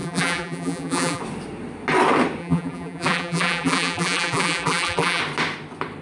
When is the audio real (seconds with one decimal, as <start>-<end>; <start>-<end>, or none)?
1.2-2.4; 5.2-6.0